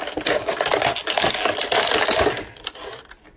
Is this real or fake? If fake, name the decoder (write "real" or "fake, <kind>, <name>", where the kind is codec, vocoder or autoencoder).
real